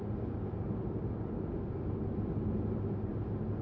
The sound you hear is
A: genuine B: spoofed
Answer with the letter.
A